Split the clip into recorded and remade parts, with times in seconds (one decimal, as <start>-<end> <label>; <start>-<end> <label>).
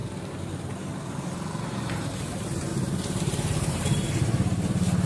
0.0-1.7 recorded; 1.7-5.1 remade